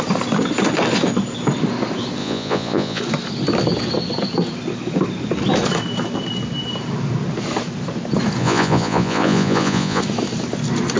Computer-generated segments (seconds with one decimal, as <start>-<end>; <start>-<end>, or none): 2.2-3.0; 8.4-10.0